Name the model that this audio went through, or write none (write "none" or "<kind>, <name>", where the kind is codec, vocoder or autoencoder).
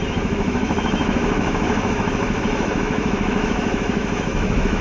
autoencoder, DAC-VAE